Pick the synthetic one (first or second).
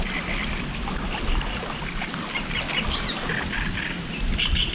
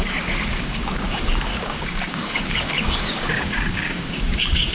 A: second